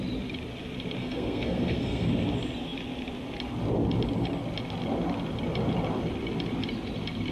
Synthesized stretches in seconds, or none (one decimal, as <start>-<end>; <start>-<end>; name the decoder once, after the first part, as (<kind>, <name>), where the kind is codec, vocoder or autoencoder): 1.0-2.1 (codec, SNAC)